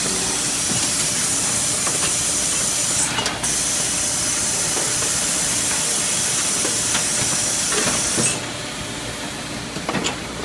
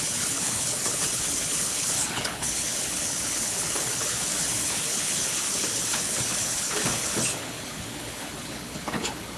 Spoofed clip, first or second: second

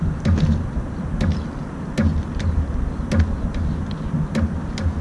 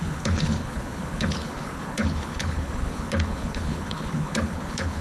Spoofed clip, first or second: second